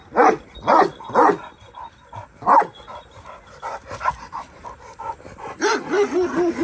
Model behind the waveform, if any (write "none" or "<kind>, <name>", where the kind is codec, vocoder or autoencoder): none